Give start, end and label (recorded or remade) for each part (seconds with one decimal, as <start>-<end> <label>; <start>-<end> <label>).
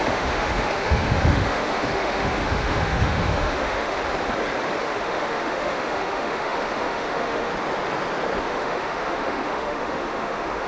0.0-4.0 remade; 4.0-4.8 recorded; 4.8-7.5 remade; 7.5-8.4 recorded; 8.4-10.7 remade